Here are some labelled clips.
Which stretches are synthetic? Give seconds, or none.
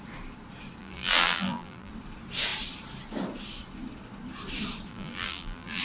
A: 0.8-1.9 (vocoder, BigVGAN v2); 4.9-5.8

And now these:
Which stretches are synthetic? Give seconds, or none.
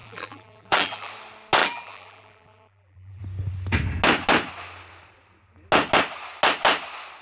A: 0.0-1.1 (vocoder, BigVGAN v2); 1.6-3.2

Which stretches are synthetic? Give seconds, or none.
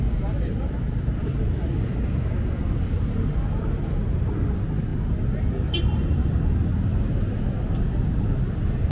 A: none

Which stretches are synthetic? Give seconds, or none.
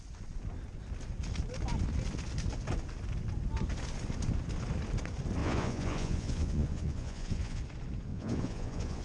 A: 5.4-7.6 (vocoder, Vocos); 8.1-9.0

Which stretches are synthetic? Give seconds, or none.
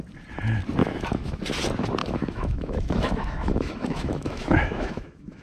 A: 0.8-1.4 (autoencoder, DAC-VAE); 2.0-5.4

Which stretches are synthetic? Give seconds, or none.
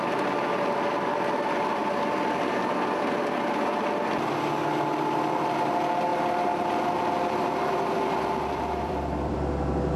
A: 1.8-2.5 (vocoder, BigVGAN v2); 6.1-10.0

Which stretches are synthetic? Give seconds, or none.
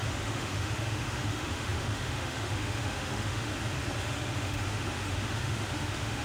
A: 0.0-3.5 (autoencoder, DAC-VAE); 4.0-6.2